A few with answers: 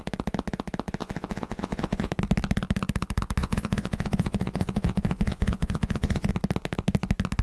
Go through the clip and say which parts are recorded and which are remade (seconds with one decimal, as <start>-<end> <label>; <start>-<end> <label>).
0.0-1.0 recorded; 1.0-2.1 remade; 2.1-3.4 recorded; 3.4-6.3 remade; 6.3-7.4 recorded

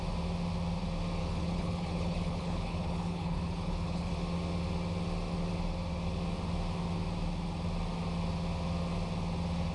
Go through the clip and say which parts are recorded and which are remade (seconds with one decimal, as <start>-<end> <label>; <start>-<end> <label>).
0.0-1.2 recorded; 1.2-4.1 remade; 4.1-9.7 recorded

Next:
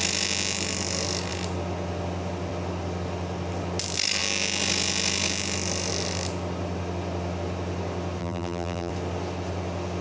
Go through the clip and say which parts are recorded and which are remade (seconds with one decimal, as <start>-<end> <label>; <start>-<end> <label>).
0.0-8.2 recorded; 8.2-8.9 remade; 8.9-10.0 recorded

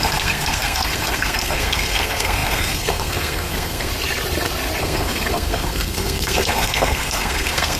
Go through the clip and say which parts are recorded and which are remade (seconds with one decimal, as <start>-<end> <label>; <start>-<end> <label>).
0.0-3.9 remade; 3.9-4.8 recorded; 4.8-7.8 remade

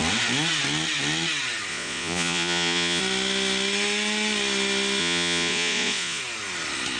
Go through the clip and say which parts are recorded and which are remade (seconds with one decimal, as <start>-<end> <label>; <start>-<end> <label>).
0.0-1.7 recorded; 1.7-3.0 remade; 3.0-5.0 recorded; 5.0-6.2 remade; 6.2-7.0 recorded

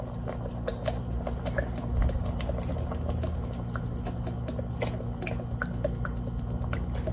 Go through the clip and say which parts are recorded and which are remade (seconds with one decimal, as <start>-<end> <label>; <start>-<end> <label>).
0.0-7.1 recorded

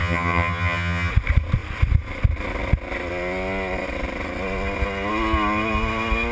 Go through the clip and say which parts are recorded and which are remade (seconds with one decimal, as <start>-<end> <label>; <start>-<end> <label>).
0.0-1.1 remade; 1.1-6.3 recorded

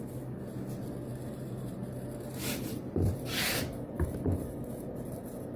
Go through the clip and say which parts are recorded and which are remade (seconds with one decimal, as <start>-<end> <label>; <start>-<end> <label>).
0.0-1.1 recorded; 1.1-3.7 remade; 3.7-5.6 recorded